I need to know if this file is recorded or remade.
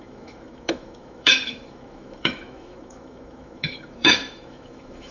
remade